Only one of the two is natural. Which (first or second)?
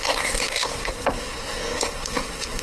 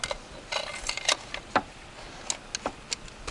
second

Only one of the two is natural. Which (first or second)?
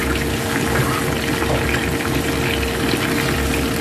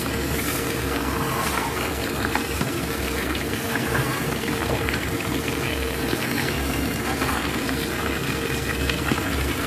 first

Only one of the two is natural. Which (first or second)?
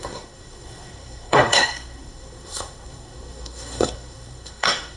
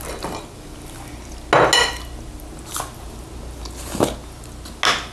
second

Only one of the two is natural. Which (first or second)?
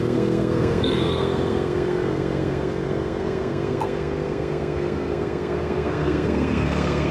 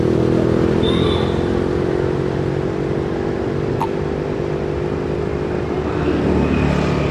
second